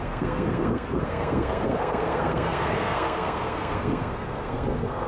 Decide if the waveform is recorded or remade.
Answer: remade